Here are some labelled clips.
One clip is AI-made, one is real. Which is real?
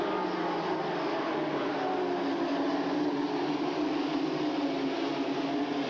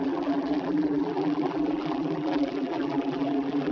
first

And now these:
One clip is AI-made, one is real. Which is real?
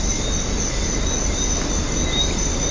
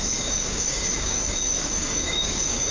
first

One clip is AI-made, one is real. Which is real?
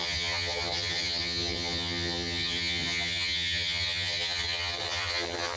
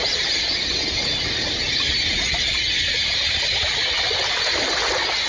second